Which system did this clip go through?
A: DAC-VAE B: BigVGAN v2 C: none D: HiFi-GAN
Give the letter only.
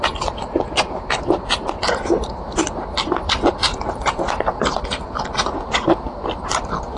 C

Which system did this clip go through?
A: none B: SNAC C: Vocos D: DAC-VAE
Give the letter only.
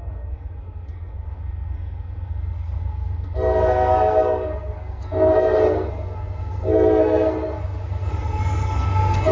B